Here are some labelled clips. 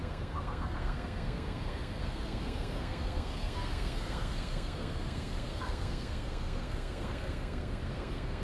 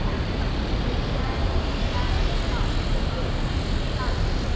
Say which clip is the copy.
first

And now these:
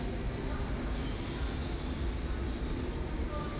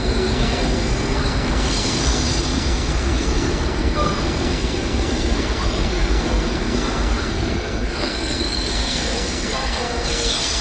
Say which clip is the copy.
second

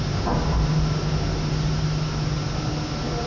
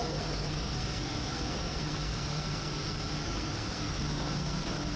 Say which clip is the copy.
second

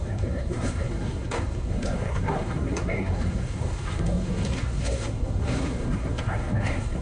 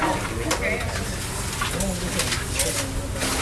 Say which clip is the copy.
first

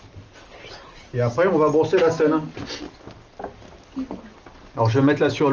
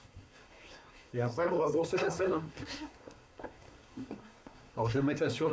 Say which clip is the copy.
second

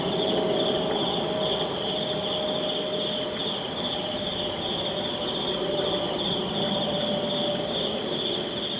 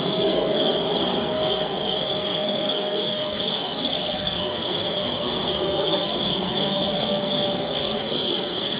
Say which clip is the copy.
second